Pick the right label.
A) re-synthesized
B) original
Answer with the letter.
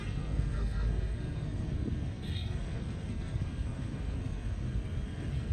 A